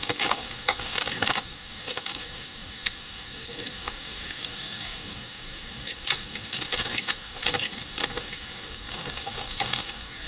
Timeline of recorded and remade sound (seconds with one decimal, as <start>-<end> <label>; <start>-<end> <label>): 0.0-10.3 remade